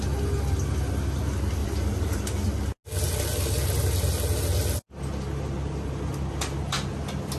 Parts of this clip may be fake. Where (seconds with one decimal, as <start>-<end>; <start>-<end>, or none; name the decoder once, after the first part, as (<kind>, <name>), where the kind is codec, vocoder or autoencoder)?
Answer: 1.6-2.2 (vocoder, BigVGAN v2)